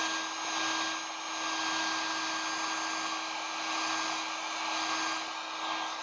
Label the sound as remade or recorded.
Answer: recorded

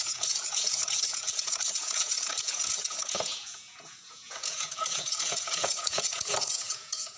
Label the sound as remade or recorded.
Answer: remade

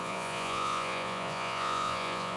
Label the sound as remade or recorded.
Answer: remade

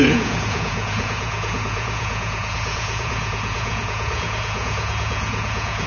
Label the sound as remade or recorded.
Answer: remade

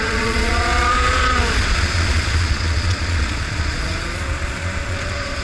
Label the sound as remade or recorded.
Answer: remade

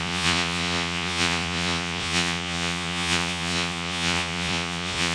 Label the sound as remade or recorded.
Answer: remade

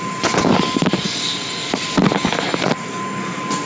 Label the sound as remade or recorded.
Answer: recorded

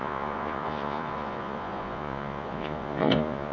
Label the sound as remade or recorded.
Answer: remade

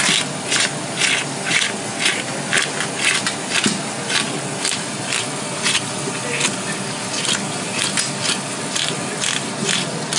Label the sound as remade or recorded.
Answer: recorded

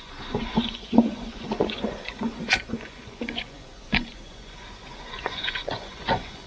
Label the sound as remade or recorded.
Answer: remade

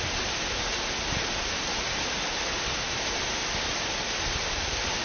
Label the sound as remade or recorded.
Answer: recorded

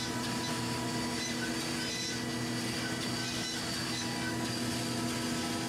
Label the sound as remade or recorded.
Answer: recorded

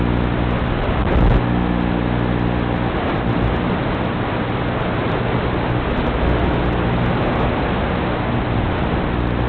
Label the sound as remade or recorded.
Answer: recorded